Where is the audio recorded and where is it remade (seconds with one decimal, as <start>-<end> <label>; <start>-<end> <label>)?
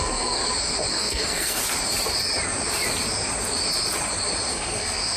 0.0-0.4 remade; 0.4-0.9 recorded; 0.9-1.6 remade; 1.6-4.5 recorded; 4.5-5.2 remade